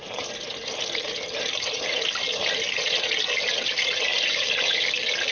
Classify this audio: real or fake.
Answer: real